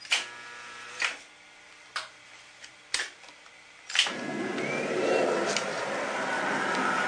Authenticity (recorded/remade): recorded